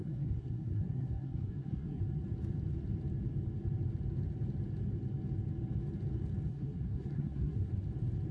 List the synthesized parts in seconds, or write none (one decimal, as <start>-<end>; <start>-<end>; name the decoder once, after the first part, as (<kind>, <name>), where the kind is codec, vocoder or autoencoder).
0.0-2.0 (codec, SNAC); 6.5-7.7